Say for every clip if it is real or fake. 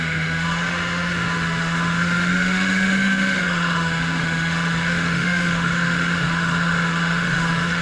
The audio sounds fake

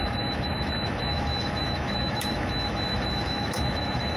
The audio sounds fake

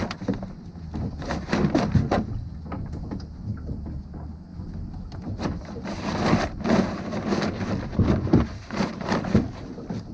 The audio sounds real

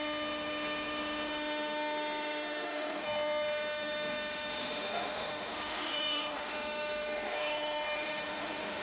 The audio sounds fake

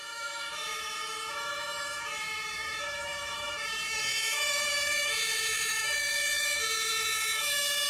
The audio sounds fake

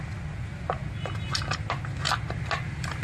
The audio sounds real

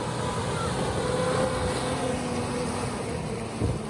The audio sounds real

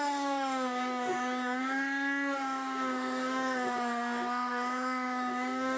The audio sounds fake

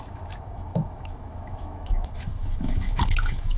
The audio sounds fake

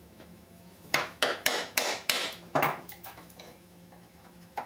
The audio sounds fake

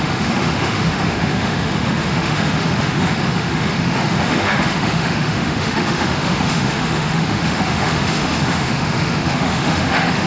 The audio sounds fake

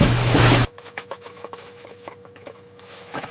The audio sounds fake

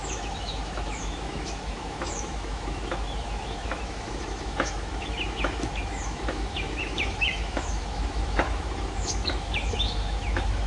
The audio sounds fake